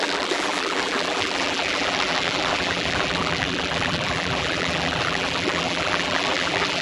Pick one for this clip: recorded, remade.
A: remade